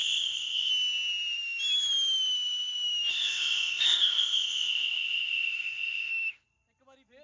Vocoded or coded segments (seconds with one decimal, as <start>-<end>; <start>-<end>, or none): 0.0-0.7; 3.1-6.1